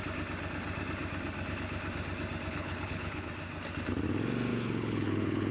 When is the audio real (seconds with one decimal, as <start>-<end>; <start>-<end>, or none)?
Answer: 0.0-2.5; 3.3-4.5

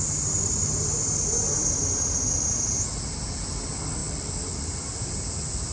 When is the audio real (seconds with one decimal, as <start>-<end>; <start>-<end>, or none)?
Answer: 0.0-5.7